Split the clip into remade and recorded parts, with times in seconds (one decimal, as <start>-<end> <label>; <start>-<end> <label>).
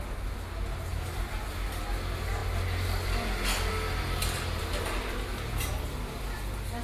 0.0-6.8 recorded